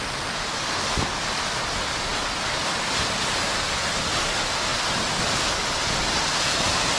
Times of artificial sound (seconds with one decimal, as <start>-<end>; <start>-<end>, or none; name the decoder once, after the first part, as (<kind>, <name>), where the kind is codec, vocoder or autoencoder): 2.1-4.1 (vocoder, BigVGAN v2)